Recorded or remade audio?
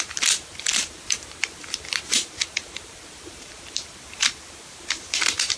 remade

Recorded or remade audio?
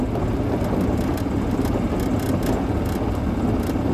recorded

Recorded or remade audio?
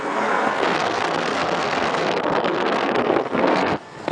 remade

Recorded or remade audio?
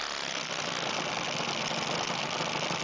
recorded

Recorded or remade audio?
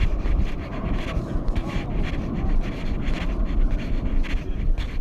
recorded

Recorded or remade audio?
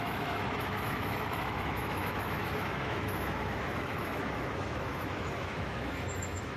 remade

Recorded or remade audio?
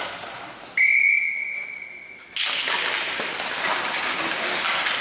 recorded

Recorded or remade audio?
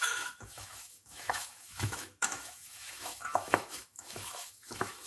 remade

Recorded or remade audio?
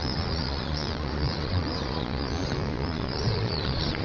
remade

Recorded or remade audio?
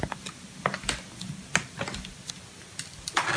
recorded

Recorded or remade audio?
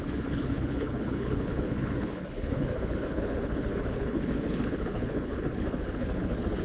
remade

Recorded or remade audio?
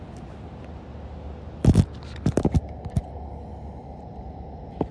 recorded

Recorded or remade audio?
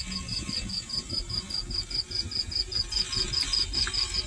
recorded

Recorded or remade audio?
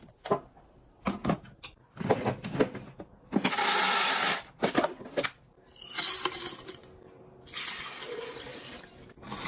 recorded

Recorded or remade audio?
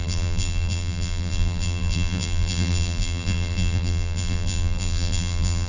remade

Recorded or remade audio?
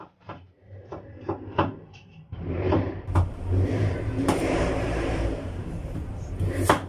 remade